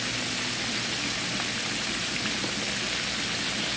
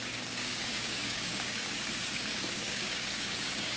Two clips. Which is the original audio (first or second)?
first